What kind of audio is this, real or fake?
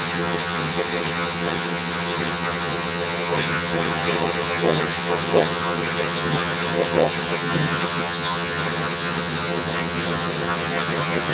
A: fake